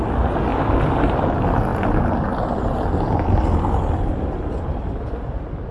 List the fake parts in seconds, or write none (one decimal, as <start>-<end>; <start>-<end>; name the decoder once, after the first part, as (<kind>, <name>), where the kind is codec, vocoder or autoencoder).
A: 0.5-1.1 (vocoder, BigVGAN v2)